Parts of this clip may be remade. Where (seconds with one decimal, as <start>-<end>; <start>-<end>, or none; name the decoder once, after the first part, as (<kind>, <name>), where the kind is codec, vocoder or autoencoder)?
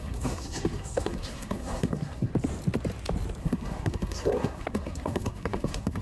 0.0-2.3 (codec, SNAC); 3.4-6.0